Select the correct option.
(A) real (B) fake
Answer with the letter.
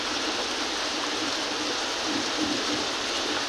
B